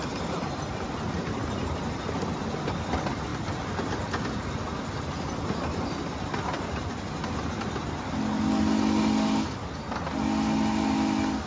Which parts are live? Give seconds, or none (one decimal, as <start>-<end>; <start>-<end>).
0.0-11.5